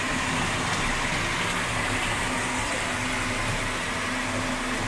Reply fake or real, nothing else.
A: real